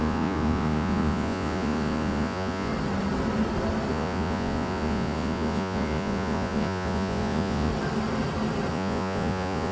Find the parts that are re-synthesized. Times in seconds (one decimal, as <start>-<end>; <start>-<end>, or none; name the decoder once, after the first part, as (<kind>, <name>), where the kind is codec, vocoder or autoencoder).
0.0-2.7 (vocoder, Vocos); 3.9-7.7; 8.7-9.7